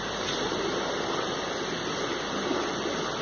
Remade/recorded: recorded